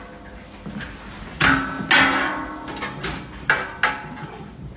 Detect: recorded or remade recorded